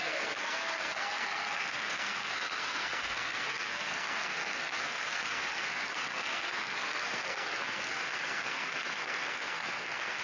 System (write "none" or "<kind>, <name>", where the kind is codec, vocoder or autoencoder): codec, SNAC